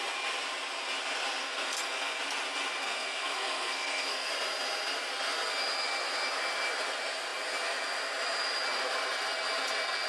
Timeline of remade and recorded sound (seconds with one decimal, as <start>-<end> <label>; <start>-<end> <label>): 0.0-1.4 recorded; 1.4-2.2 remade; 2.2-2.8 recorded; 2.8-4.3 remade; 4.3-10.1 recorded